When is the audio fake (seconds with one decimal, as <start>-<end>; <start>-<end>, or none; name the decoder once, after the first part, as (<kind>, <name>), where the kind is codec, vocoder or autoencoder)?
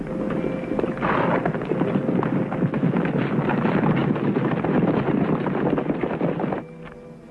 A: none